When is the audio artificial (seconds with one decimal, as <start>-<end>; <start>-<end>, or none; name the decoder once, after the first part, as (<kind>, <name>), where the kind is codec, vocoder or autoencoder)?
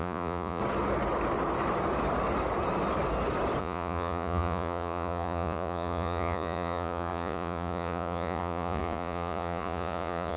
0.0-0.6 (vocoder, Vocos); 3.6-10.4